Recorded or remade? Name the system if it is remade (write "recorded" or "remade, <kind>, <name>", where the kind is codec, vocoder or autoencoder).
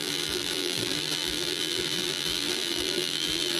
remade, vocoder, BigVGAN v2